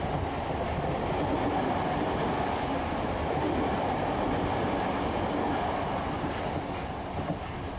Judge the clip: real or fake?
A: real